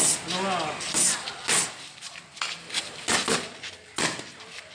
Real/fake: real